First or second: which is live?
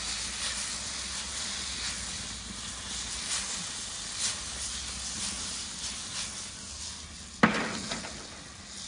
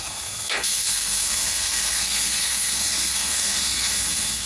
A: first